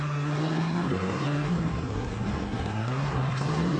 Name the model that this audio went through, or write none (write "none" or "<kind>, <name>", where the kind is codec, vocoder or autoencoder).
codec, SNAC